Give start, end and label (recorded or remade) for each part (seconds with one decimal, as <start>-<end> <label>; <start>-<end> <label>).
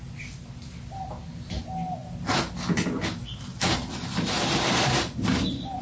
0.0-5.8 recorded